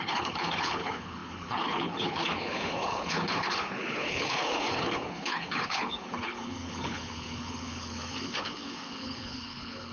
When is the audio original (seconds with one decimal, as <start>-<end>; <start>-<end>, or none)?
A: none